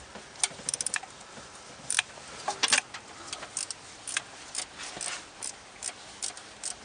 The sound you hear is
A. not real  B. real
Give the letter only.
B